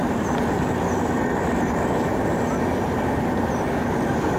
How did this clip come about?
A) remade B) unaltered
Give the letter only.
B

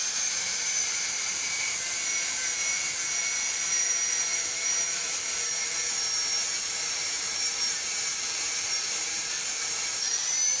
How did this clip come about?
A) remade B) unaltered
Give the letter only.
A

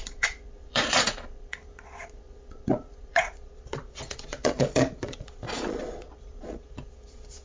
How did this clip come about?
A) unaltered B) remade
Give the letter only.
B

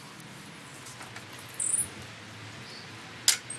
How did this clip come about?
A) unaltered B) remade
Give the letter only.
A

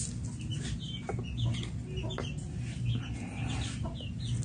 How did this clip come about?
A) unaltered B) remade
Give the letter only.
A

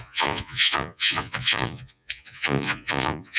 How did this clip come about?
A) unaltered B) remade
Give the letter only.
B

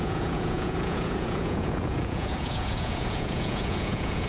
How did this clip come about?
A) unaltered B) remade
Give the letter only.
B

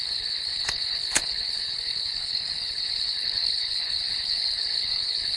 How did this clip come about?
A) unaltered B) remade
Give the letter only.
B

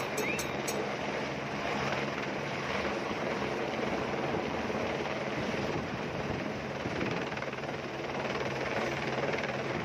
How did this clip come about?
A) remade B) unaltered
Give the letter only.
A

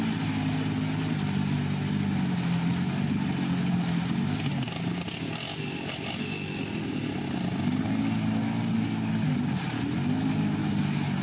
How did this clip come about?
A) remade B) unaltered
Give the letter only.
B